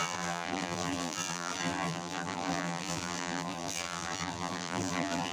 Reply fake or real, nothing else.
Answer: fake